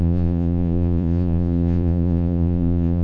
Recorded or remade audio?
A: remade